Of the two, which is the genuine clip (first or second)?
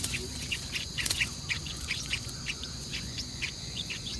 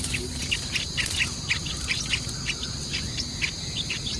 second